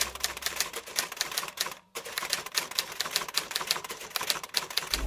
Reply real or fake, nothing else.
fake